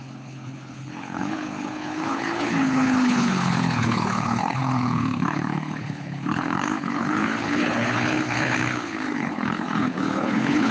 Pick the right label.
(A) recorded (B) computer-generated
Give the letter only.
B